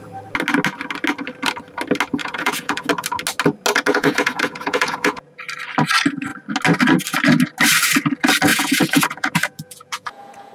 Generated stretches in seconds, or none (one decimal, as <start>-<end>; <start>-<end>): 2.2-2.9; 3.9-5.4; 8.5-10.5